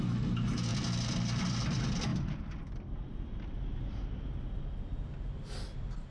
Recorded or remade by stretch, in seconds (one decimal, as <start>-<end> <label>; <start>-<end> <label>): 0.0-6.1 recorded